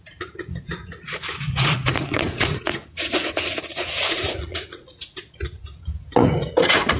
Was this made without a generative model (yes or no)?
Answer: no